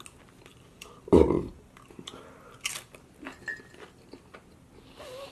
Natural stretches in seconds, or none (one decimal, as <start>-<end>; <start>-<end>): 0.0-0.5; 3.1-3.5; 4.4-5.3